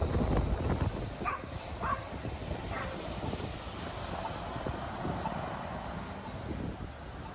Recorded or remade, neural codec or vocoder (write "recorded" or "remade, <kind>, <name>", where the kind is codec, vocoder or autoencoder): recorded